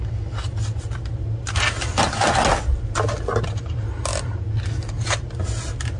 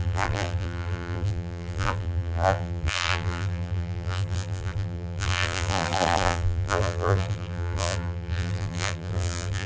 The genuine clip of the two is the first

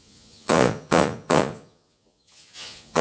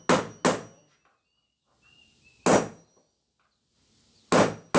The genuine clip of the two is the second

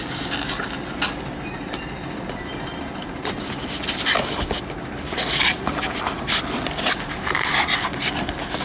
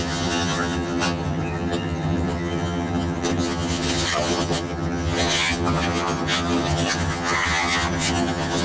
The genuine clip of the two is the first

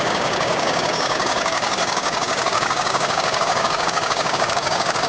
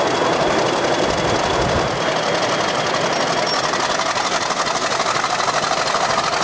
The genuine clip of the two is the second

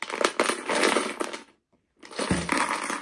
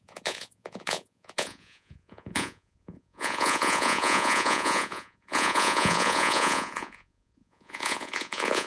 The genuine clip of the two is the first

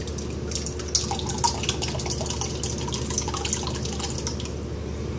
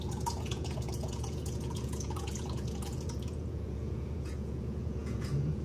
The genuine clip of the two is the first